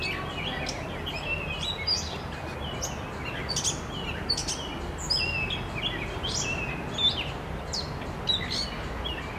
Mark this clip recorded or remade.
recorded